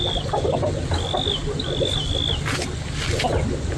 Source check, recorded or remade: recorded